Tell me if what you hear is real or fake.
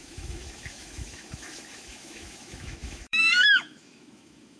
fake